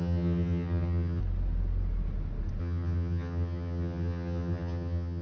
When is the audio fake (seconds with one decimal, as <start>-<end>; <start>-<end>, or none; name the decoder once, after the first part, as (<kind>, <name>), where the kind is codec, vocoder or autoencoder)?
0.0-1.2 (vocoder, HiFi-GAN); 2.6-5.2